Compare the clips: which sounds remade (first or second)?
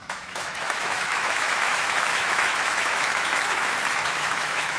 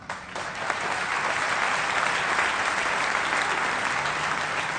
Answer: first